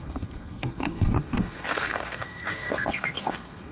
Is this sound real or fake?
fake